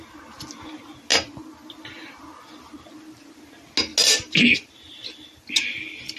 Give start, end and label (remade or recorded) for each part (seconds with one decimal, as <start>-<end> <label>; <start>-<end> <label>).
0.0-6.2 recorded